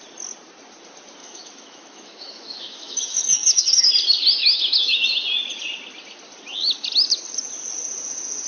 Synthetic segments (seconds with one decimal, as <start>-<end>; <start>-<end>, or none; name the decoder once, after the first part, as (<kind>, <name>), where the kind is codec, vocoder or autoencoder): 1.2-3.8 (autoencoder, DAC-VAE); 4.4-5.0

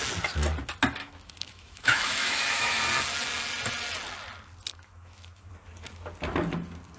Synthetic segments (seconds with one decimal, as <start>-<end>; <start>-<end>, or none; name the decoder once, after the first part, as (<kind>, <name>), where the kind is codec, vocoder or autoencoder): 1.0-2.8 (autoencoder, DAC-VAE); 4.7-5.5

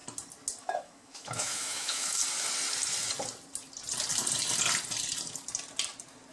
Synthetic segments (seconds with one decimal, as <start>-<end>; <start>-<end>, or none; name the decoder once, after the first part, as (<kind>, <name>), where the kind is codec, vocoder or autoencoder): 0.6-2.2 (autoencoder, DAC-VAE)

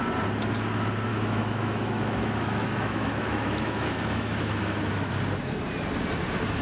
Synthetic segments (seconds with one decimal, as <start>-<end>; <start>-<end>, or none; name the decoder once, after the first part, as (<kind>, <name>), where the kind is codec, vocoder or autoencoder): 1.1-5.1 (autoencoder, DAC-VAE)

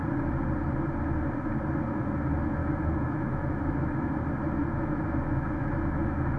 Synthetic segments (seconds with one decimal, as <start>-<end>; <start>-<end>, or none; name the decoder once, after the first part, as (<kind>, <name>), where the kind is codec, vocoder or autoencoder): 2.6-4.1 (autoencoder, DAC-VAE); 4.6-6.4

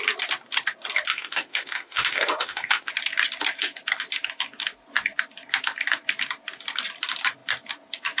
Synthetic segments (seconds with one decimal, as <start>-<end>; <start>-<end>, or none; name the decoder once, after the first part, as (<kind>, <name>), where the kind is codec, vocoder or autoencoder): 1.1-2.9 (autoencoder, DAC-VAE)

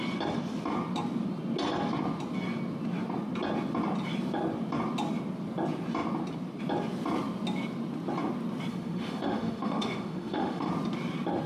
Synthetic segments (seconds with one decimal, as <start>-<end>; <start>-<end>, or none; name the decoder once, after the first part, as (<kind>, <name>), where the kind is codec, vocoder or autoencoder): 8.7-10.7 (autoencoder, DAC-VAE)

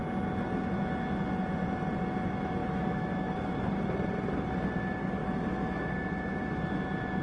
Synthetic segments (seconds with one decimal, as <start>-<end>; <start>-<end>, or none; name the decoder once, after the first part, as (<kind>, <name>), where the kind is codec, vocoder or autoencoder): 2.6-3.7 (autoencoder, DAC-VAE); 5.2-5.8